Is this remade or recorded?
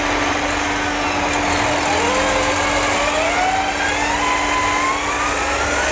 recorded